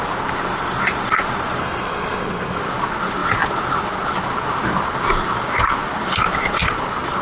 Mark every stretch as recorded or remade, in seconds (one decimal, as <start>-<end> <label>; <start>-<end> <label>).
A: 0.0-1.6 recorded; 1.6-2.6 remade; 2.6-7.2 recorded

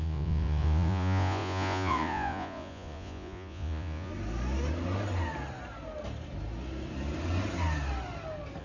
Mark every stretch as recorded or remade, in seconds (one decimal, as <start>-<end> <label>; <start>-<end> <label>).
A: 0.0-4.1 remade; 4.1-8.6 recorded

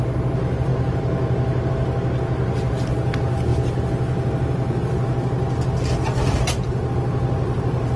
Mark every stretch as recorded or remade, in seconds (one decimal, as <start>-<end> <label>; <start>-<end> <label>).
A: 0.0-8.0 recorded

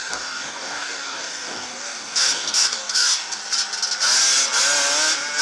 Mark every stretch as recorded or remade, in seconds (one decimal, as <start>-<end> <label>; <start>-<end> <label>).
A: 0.0-3.4 remade; 3.4-5.4 recorded

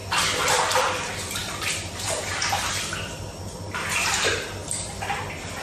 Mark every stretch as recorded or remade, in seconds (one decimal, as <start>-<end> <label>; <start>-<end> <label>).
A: 0.0-5.6 recorded

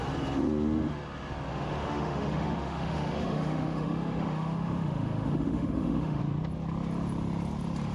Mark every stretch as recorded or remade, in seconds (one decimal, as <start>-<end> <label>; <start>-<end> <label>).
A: 0.0-1.5 recorded; 1.5-6.2 remade; 6.2-7.9 recorded

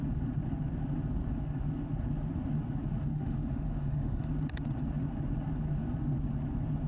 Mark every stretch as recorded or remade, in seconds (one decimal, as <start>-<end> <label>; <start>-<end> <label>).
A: 0.0-3.1 recorded; 3.1-4.3 remade; 4.3-6.9 recorded